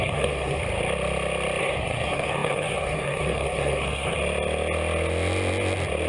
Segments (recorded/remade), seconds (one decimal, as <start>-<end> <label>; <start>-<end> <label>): 0.0-0.6 remade; 0.6-1.6 recorded; 1.6-4.2 remade; 4.2-6.1 recorded